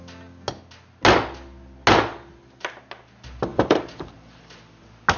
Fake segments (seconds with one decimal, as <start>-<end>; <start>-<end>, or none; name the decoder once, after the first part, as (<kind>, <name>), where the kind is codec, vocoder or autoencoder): 3.5-4.4 (vocoder, BigVGAN v2)